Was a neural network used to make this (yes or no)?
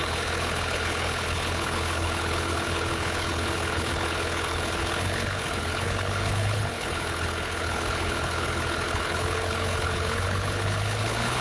yes